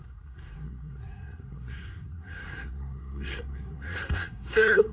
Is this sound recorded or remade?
remade